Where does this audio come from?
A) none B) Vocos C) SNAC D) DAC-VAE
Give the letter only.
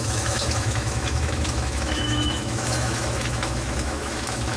D